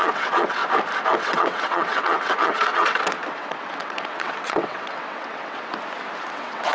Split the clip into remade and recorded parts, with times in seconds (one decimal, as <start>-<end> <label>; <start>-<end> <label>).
0.0-0.6 remade; 0.6-1.2 recorded; 1.2-5.7 remade; 5.7-6.2 recorded; 6.2-6.7 remade